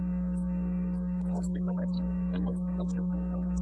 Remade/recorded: remade